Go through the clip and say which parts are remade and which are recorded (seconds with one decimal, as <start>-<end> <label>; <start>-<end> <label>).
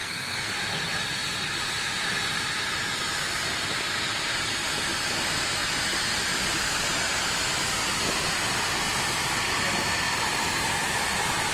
0.0-0.5 remade; 0.5-11.5 recorded